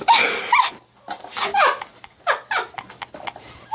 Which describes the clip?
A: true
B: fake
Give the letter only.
A